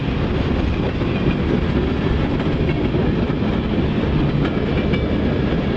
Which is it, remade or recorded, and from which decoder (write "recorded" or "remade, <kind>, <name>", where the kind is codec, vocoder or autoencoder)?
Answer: recorded